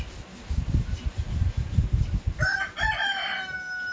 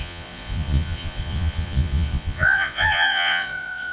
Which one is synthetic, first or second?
second